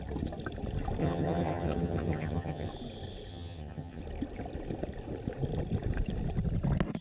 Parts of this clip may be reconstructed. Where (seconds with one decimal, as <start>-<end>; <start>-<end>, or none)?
1.0-2.7; 3.3-4.0